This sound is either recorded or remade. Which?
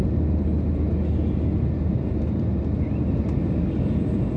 recorded